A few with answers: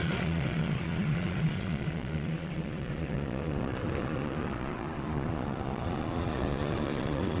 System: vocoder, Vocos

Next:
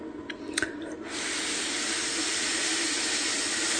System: none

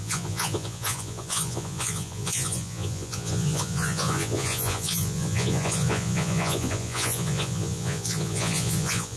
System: vocoder, Vocos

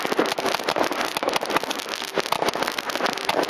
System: none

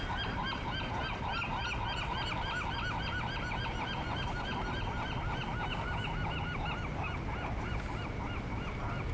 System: none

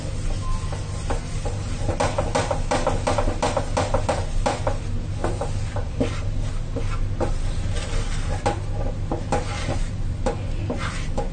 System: none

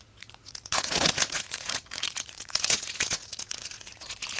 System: vocoder, Vocos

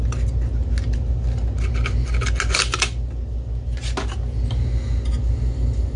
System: none